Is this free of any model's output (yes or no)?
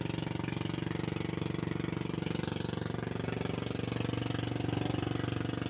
yes